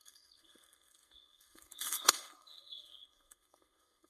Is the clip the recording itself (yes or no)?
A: no